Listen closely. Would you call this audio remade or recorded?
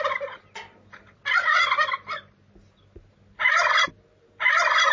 recorded